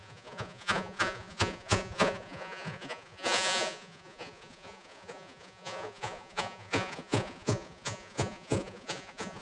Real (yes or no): no